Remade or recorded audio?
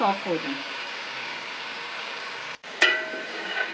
remade